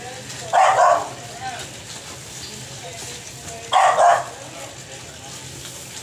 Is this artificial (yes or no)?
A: no